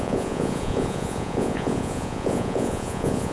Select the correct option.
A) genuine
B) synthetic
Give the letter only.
B